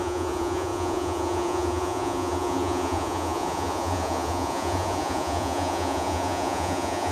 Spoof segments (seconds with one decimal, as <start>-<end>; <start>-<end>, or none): 0.0-7.1